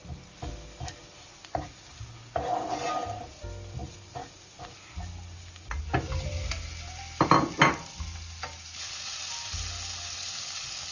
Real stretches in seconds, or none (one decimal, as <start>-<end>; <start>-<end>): 0.0-3.8; 4.6-10.9